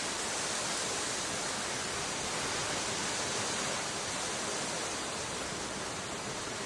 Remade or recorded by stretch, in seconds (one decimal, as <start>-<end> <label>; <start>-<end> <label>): 0.0-3.0 remade; 3.0-4.5 recorded; 4.5-6.7 remade